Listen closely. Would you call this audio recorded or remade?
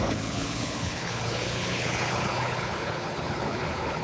remade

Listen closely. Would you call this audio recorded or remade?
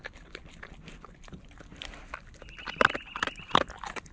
recorded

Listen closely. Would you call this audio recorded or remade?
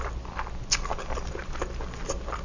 recorded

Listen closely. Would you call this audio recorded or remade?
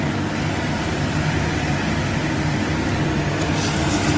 recorded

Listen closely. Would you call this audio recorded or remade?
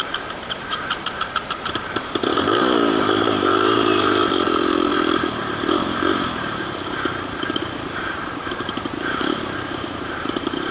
remade